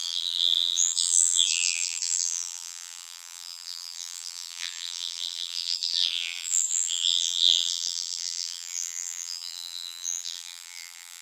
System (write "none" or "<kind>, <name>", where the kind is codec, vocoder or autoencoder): vocoder, BigVGAN v2